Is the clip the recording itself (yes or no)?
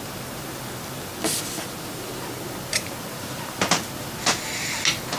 yes